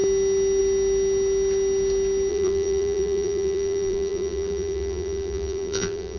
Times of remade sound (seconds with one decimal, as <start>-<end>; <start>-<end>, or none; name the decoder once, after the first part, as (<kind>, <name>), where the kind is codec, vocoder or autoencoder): 2.3-6.2 (vocoder, BigVGAN v2)